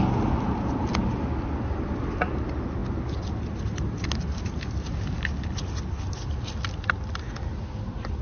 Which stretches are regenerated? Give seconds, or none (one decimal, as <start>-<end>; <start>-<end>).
none